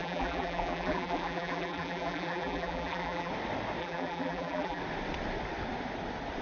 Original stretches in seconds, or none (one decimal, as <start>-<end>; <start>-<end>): 3.3-3.8; 4.8-6.4